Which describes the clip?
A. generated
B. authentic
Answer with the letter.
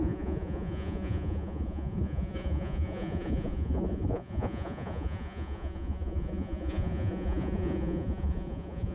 A